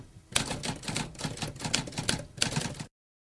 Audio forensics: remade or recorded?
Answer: recorded